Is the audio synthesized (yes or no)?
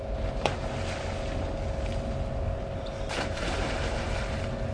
no